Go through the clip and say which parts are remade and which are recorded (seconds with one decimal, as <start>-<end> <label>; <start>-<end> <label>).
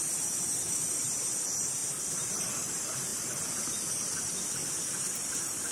0.0-1.8 recorded; 1.8-2.7 remade; 2.7-5.7 recorded